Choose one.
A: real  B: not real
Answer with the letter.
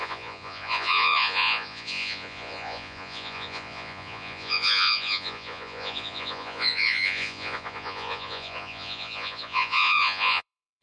B